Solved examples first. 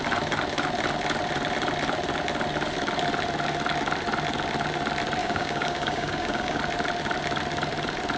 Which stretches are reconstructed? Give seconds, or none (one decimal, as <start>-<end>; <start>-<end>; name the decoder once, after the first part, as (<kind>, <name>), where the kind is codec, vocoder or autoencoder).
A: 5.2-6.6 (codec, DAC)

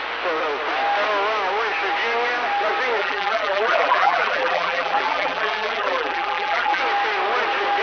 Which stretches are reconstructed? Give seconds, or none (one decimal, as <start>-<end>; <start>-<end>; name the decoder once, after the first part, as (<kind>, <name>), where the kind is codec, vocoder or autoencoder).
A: 3.0-6.8 (vocoder, BigVGAN v2)

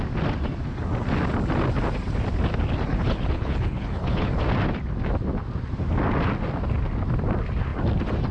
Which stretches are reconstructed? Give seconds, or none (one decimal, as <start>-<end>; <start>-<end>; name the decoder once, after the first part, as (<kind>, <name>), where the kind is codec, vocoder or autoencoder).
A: 2.9-4.3 (codec, HILCodec)

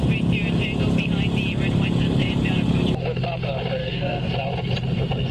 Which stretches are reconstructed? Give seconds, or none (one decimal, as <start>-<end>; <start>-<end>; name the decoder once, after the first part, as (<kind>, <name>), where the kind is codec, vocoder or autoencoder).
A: 3.8-4.3 (codec, SNAC)

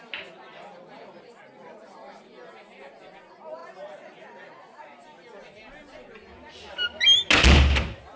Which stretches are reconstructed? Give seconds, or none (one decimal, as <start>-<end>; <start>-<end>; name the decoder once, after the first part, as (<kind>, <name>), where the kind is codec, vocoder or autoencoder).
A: none

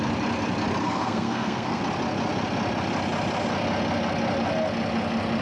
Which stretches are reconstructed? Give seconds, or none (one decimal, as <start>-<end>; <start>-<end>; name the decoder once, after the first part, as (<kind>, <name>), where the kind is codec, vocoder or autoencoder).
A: 0.8-1.8 (codec, SNAC)